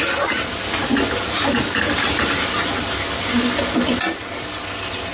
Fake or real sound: real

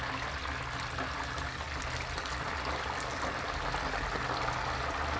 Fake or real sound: real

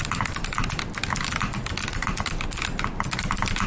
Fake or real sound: real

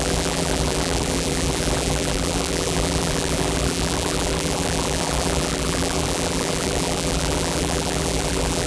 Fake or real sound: fake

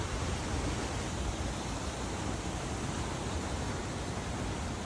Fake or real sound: real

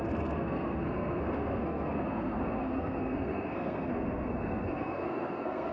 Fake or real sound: fake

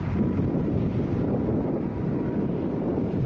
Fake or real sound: real